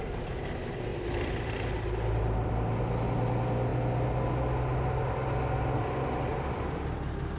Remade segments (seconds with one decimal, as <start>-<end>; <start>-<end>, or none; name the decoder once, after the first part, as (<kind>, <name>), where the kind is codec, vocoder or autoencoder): 0.9-2.5 (vocoder, BigVGAN v2); 6.3-6.9